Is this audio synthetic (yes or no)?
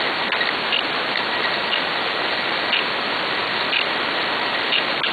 no